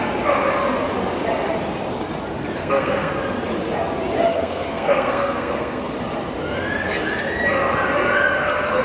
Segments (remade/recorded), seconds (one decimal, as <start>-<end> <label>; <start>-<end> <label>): 0.0-2.6 recorded; 2.6-3.1 remade; 3.1-4.3 recorded; 4.3-5.9 remade; 5.9-8.8 recorded